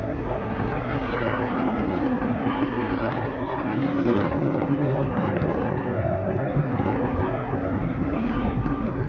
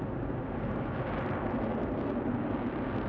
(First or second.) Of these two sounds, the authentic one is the second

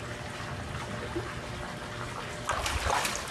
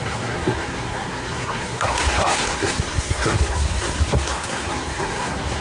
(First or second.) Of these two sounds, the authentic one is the first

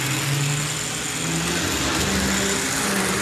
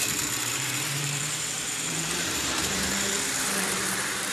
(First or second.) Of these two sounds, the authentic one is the first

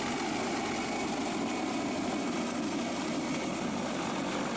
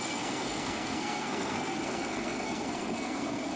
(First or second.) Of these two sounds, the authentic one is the first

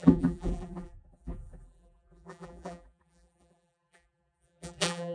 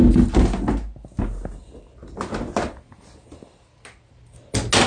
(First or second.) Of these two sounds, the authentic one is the second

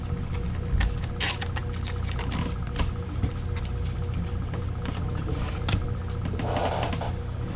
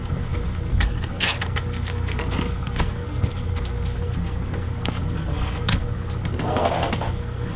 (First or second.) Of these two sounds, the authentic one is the first